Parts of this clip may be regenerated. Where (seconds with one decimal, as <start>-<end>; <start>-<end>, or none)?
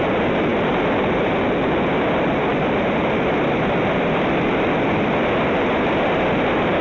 none